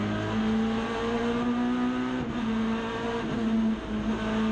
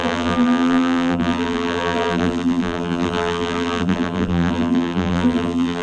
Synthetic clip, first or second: second